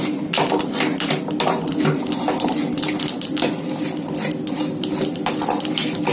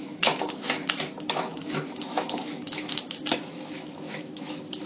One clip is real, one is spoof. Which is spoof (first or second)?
second